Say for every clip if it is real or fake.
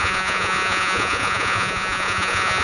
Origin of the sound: fake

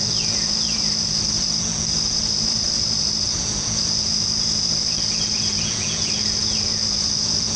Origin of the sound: fake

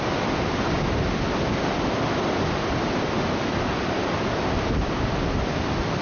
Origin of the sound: real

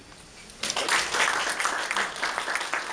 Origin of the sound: real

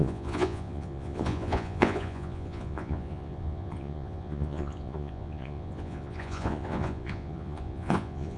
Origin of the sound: fake